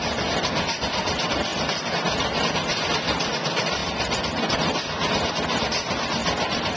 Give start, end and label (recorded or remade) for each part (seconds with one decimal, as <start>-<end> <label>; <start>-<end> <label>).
0.0-6.8 recorded